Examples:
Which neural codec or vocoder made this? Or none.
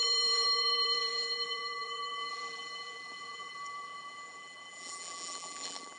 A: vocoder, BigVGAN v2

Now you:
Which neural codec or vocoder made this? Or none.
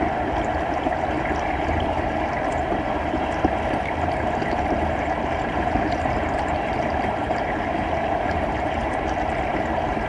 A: vocoder, BigVGAN v2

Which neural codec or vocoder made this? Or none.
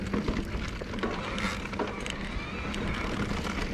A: none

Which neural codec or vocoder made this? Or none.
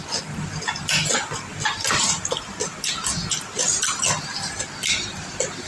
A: none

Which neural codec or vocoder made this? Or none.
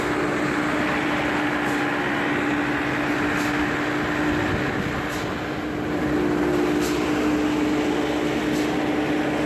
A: none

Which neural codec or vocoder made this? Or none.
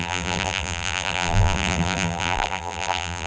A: vocoder, BigVGAN v2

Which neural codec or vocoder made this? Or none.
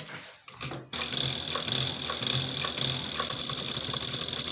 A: none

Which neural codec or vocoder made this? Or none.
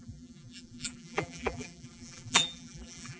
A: vocoder, BigVGAN v2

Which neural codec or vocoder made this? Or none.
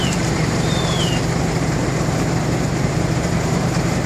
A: vocoder, BigVGAN v2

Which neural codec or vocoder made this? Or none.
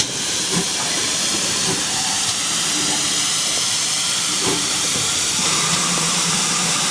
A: vocoder, BigVGAN v2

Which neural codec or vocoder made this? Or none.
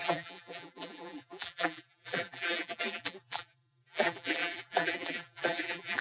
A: vocoder, BigVGAN v2